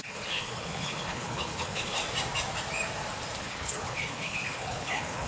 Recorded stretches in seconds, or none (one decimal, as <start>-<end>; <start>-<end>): 2.0-3.4